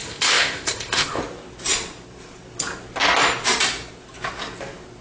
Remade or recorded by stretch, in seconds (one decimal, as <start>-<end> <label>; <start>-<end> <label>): 0.0-1.2 remade; 1.2-5.0 recorded